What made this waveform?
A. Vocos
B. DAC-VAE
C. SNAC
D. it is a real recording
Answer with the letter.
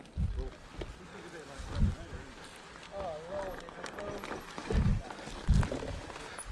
D